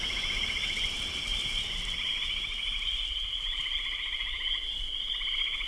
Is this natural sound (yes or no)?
yes